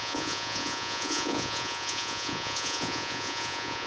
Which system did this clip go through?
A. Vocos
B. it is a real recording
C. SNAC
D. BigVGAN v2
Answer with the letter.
A